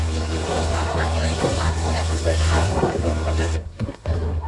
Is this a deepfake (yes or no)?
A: yes